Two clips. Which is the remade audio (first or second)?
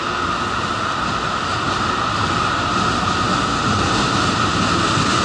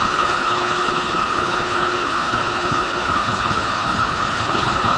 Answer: second